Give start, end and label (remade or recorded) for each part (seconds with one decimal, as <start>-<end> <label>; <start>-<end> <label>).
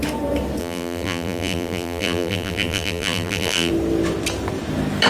0.0-0.6 recorded; 0.6-3.7 remade; 3.7-5.1 recorded